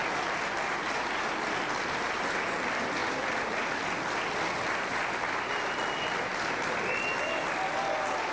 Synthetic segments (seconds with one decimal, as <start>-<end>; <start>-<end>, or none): none